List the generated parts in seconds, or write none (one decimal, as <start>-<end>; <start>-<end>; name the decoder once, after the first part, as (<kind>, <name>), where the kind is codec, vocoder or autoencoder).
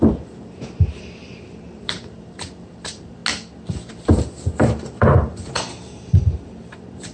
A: 0.0-3.2 (vocoder, BigVGAN v2); 3.9-7.1